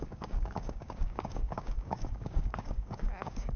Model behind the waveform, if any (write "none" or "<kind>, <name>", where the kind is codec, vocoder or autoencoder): codec, DAC